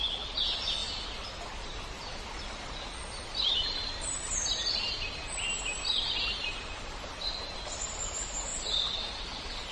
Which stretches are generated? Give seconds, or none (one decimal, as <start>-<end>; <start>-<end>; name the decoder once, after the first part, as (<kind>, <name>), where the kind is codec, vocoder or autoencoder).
3.8-7.5 (vocoder, BigVGAN v2)